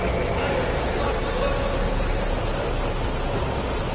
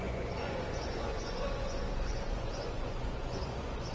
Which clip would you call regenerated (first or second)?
second